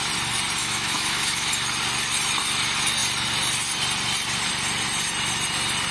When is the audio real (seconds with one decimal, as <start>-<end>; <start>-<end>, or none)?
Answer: 0.0-0.6; 1.5-5.9